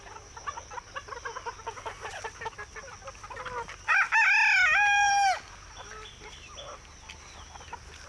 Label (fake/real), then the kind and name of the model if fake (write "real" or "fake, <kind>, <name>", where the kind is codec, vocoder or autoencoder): real